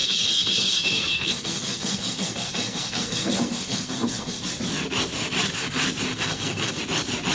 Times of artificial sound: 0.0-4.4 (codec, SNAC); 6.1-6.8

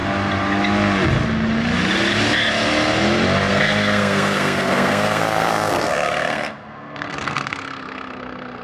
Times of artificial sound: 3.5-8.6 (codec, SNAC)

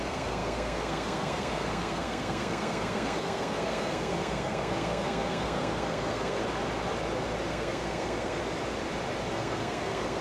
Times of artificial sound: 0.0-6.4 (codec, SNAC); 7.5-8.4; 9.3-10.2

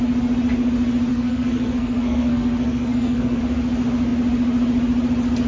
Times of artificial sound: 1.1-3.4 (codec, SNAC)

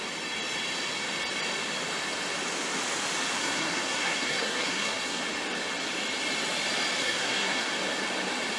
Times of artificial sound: 3.4-5.2 (codec, SNAC); 7.0-7.7